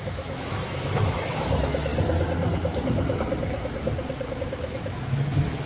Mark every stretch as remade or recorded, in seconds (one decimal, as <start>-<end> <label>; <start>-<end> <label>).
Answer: 0.0-1.9 remade; 1.9-4.4 recorded; 4.4-5.7 remade